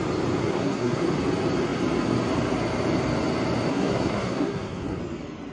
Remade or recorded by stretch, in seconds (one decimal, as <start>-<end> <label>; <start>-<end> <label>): 0.0-0.4 recorded; 0.4-1.0 remade; 1.0-3.7 recorded; 3.7-5.0 remade; 5.0-5.5 recorded